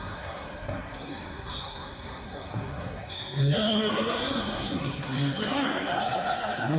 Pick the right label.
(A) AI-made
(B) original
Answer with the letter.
A